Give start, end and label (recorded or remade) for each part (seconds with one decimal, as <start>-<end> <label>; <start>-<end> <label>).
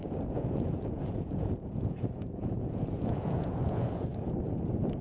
0.0-4.1 remade; 4.1-5.0 recorded